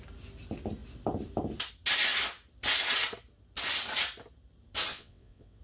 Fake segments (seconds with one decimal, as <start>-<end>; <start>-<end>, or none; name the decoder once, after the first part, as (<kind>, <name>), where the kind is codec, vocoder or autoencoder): 4.9-5.6 (vocoder, WaveNeXt)